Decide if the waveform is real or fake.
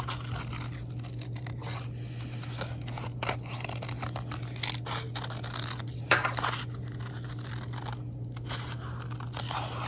real